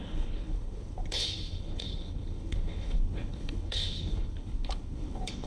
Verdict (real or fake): fake